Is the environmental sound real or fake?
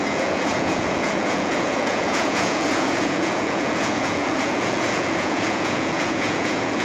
fake